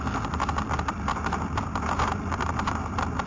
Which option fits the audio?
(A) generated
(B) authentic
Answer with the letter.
B